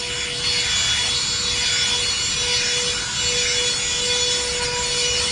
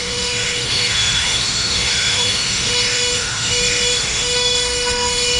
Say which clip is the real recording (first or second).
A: first